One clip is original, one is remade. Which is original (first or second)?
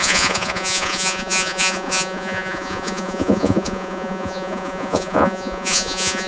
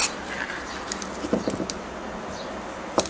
second